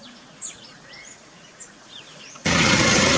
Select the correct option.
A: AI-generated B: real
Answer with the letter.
A